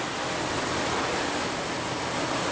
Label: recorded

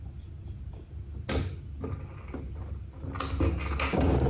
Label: recorded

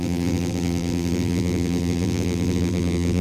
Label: remade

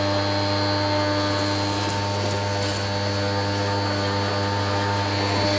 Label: recorded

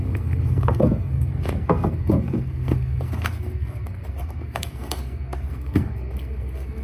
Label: remade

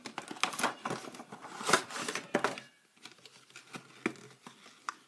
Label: recorded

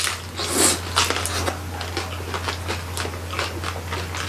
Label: recorded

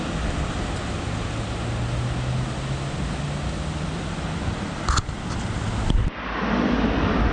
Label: recorded